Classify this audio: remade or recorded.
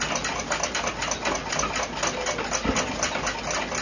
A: recorded